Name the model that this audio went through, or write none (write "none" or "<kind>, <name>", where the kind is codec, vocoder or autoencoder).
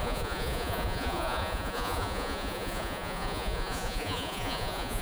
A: vocoder, Vocos